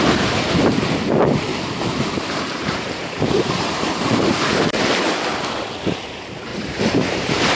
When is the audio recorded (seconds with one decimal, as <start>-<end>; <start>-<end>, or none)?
0.0-1.5; 4.9-6.5